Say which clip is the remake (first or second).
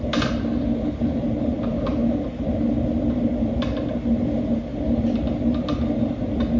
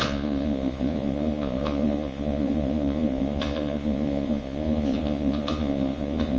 second